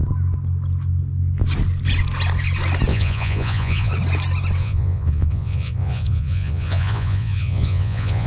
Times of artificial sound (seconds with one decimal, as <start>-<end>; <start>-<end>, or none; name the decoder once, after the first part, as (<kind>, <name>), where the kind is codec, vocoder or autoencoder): 2.9-3.9 (vocoder, Vocos); 4.6-8.3